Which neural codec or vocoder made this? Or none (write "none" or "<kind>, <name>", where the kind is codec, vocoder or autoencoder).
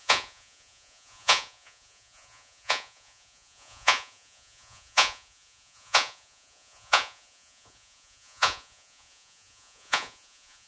vocoder, Vocos